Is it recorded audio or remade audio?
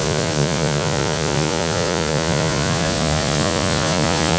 remade